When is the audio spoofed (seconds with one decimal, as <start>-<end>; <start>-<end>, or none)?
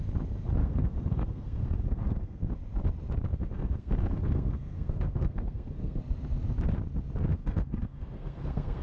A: 0.6-2.5; 3.3-6.0; 7.3-8.8